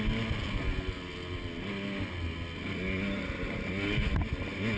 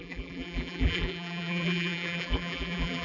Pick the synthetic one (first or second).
second